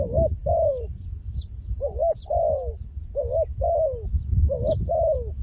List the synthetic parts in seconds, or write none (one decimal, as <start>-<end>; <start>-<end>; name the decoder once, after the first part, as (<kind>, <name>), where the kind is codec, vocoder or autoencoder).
none

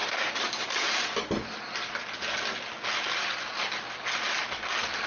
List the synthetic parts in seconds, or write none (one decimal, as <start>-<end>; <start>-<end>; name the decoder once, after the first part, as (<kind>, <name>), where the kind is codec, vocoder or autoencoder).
none

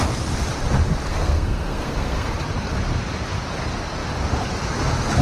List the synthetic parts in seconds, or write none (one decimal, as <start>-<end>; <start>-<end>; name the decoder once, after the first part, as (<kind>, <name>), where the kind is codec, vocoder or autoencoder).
1.1-2.3 (codec, SNAC)

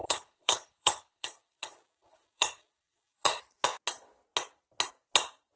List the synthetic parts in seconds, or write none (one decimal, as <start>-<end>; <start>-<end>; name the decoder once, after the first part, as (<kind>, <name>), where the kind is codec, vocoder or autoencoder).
0.0-3.4 (codec, HILCodec)

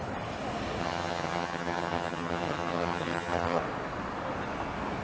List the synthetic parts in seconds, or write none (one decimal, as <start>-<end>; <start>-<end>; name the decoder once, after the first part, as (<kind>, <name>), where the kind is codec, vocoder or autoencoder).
0.8-3.6 (vocoder, HiFi-GAN)